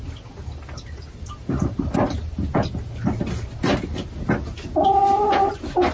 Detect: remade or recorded recorded